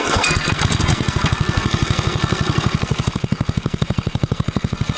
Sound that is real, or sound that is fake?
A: fake